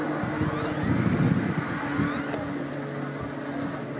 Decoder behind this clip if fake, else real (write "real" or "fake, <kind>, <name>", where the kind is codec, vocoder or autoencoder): real